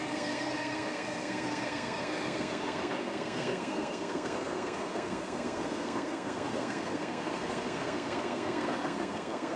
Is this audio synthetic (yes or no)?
yes